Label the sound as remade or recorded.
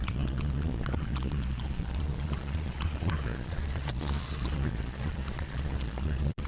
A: remade